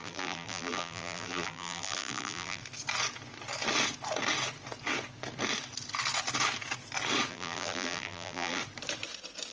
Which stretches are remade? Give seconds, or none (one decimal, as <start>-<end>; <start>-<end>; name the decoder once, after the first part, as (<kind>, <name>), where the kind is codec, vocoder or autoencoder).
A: 0.0-2.6 (vocoder, BigVGAN v2); 7.3-8.6